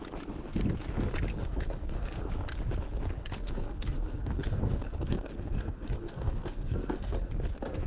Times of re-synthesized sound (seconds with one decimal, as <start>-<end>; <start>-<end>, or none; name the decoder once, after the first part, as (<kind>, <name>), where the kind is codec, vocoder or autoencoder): 1.3-2.3 (codec, SNAC); 3.2-7.3